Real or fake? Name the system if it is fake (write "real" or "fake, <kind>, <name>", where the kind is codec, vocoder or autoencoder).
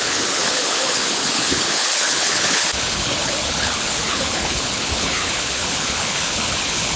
fake, codec, HILCodec